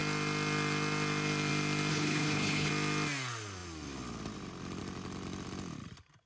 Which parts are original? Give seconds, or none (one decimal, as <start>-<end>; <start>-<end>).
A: 0.0-1.9; 2.7-6.3